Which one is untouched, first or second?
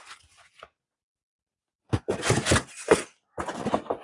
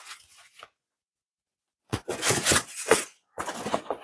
first